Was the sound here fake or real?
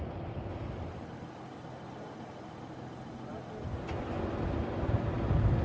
real